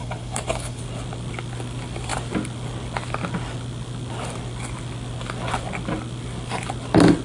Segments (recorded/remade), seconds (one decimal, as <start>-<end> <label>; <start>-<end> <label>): 0.0-0.8 remade; 0.8-7.2 recorded